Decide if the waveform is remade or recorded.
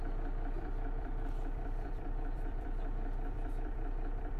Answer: remade